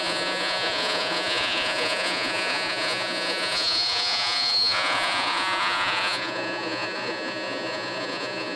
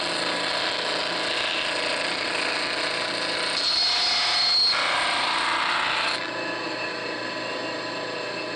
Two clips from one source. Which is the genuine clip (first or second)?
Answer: second